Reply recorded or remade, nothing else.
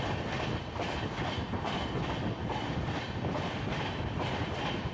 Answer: recorded